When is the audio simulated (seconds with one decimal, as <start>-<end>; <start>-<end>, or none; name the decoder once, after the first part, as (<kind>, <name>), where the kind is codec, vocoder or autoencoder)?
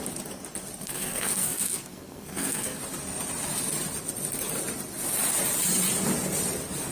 0.8-2.8 (codec, SNAC)